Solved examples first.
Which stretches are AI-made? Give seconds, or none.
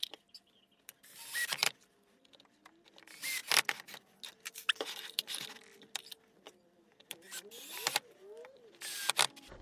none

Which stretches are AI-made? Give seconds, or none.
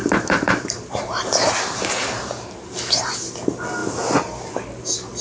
0.0-3.1 (vocoder, BigVGAN v2)